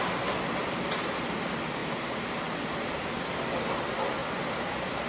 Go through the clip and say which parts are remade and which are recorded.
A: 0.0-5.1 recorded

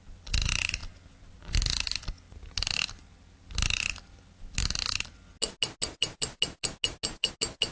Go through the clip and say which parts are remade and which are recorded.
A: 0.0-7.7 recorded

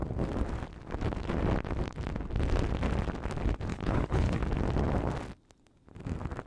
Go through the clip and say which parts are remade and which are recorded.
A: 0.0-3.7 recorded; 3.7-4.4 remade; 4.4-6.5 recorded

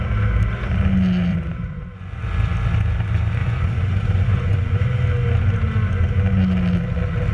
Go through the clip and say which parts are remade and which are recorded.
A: 0.0-1.3 recorded; 1.3-2.2 remade; 2.2-3.4 recorded; 3.4-4.8 remade; 4.8-7.3 recorded

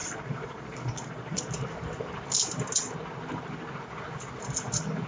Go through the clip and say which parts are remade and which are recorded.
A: 0.0-1.5 remade; 1.5-5.1 recorded